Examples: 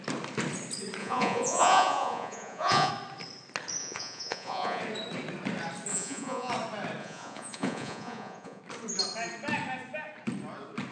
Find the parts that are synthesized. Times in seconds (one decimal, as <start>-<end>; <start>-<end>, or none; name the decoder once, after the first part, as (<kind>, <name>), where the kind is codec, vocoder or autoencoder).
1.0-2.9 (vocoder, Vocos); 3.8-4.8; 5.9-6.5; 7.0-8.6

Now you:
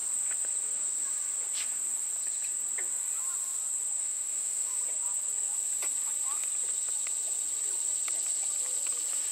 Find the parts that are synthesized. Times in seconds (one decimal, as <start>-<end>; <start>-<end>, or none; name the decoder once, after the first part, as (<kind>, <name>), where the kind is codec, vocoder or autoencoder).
4.0-4.8 (autoencoder, DAC-VAE)

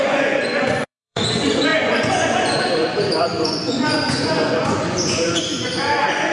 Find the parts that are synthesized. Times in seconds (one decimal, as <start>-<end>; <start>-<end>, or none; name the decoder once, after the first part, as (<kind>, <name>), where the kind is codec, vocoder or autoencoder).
0.0-6.3 (vocoder, Vocos)

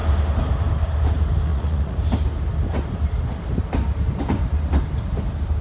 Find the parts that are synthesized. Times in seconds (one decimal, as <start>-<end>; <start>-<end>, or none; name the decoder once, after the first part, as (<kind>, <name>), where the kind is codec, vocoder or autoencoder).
1.5-2.0 (vocoder, Vocos)

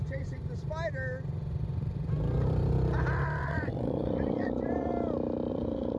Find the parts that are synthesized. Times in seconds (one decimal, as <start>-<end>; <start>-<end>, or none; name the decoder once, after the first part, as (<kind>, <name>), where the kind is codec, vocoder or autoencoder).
0.0-0.4 (vocoder, Vocos); 3.4-4.9; 5.5-6.0

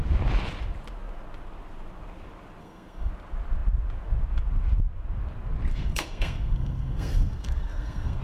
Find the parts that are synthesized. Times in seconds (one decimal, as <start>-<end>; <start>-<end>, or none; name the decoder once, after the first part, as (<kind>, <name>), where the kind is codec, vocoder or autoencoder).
2.6-3.1 (codec, SNAC); 5.7-8.2

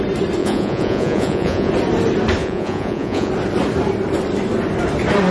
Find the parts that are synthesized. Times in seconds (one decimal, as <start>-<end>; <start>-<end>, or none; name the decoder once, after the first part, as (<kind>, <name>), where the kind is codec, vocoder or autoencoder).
0.4-1.7 (vocoder, Vocos); 2.4-3.3

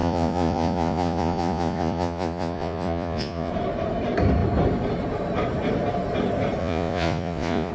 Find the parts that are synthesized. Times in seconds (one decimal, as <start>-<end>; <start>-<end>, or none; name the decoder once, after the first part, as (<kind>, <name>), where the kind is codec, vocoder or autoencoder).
0.0-3.5 (vocoder, Vocos); 6.6-7.7